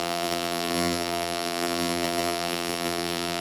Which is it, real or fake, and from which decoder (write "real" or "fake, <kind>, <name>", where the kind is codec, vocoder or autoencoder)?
fake, vocoder, BigVGAN v2